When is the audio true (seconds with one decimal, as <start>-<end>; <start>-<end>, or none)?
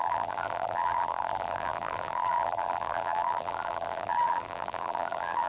none